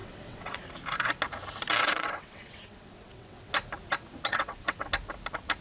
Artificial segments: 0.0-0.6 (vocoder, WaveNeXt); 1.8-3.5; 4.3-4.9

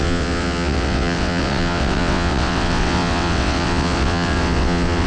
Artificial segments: 0.0-5.1 (vocoder, WaveNeXt)

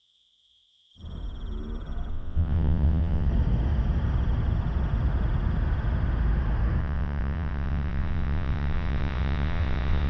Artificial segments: 0.0-0.9 (vocoder, WaveNeXt); 2.1-3.3; 6.8-10.1

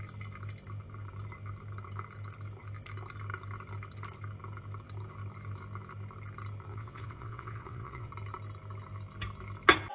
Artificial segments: 6.7-8.1 (vocoder, WaveNeXt)